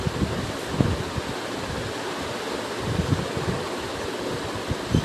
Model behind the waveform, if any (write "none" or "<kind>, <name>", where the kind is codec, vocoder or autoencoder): none